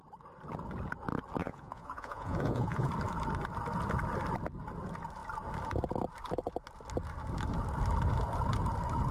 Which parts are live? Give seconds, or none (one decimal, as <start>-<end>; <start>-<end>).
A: 0.0-1.4; 2.9-9.1